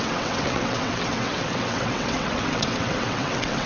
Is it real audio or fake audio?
fake